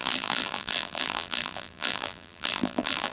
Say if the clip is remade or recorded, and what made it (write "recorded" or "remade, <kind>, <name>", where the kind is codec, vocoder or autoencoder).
remade, vocoder, BigVGAN v2